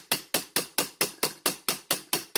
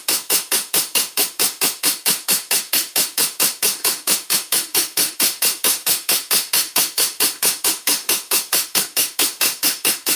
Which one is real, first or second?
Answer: first